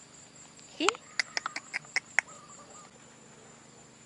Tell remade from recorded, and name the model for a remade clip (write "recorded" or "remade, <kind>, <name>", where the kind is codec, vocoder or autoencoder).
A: recorded